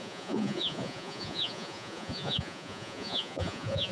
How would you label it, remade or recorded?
remade